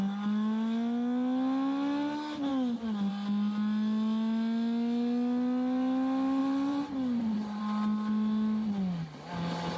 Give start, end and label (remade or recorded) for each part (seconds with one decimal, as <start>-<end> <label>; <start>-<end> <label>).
0.0-6.4 recorded; 6.4-7.6 remade; 7.6-9.8 recorded